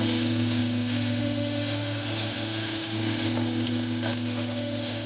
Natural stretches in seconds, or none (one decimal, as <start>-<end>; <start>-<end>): none